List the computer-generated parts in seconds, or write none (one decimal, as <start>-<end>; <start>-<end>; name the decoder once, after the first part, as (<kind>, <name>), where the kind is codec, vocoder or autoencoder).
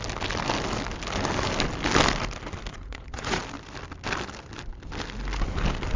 2.7-3.4 (vocoder, Vocos)